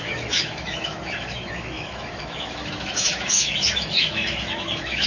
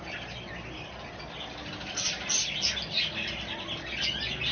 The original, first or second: second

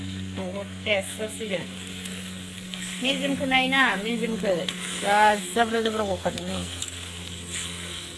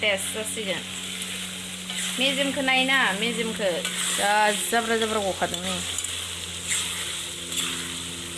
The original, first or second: second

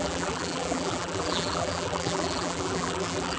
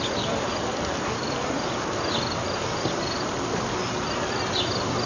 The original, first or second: second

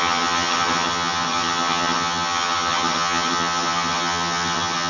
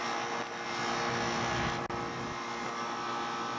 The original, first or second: second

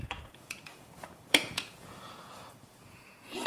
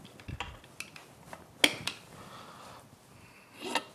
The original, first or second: second